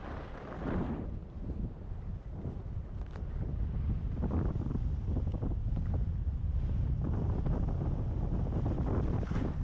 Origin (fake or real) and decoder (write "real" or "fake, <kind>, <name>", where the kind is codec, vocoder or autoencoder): fake, vocoder, BigVGAN v2